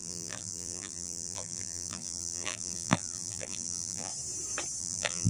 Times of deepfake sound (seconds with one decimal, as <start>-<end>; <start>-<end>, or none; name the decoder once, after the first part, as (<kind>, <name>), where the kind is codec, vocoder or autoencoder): 0.0-4.1 (vocoder, BigVGAN v2); 4.8-5.3